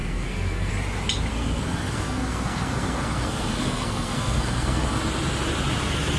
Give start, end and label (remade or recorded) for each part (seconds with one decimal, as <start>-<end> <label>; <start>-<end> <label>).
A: 0.0-0.7 remade; 0.7-1.3 recorded; 1.3-5.0 remade; 5.0-6.2 recorded